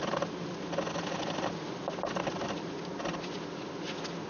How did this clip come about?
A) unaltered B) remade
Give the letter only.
A